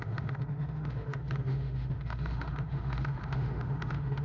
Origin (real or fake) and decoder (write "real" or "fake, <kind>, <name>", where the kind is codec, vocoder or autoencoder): fake, autoencoder, DAC-VAE